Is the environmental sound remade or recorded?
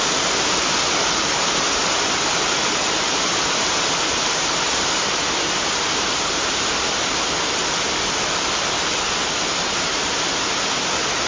recorded